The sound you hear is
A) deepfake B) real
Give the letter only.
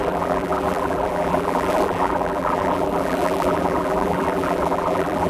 A